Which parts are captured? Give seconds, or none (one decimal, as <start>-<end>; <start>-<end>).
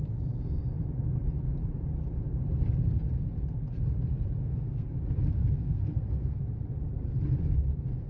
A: 0.0-4.4; 4.9-5.4; 6.4-8.1